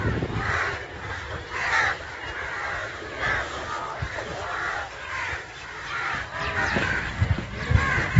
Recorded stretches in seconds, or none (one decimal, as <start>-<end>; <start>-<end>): 0.0-8.2